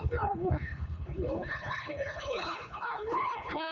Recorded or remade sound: remade